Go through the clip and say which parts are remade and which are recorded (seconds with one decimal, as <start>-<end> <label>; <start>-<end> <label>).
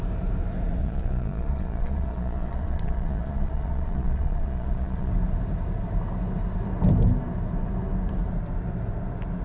0.0-0.8 recorded; 0.8-5.1 remade; 5.1-9.4 recorded